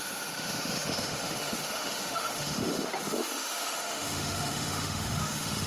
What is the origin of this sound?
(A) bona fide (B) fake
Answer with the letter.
B